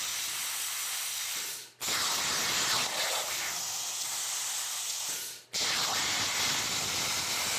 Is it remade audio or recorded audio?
recorded